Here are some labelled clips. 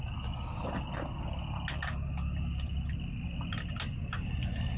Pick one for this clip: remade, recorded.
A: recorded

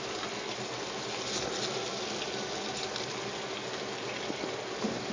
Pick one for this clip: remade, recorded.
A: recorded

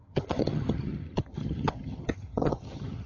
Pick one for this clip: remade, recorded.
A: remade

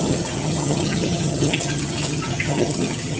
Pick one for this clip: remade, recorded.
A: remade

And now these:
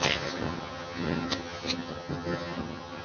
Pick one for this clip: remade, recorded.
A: remade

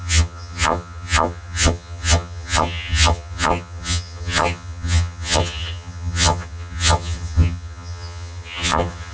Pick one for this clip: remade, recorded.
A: remade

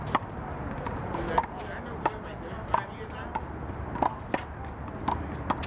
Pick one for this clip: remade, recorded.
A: recorded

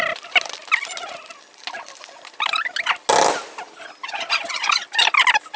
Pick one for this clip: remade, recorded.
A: recorded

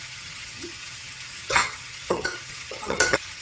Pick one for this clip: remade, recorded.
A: remade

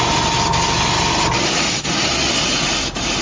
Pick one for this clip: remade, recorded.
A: recorded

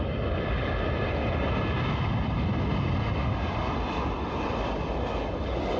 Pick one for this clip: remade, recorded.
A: recorded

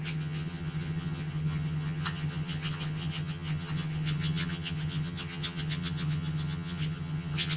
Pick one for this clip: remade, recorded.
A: remade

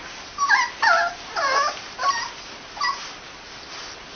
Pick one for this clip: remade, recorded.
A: recorded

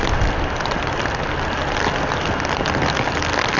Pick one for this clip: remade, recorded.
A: recorded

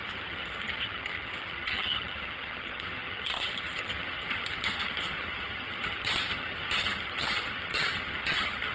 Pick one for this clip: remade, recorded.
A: remade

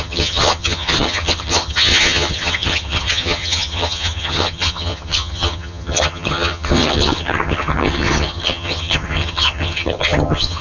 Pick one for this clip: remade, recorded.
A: remade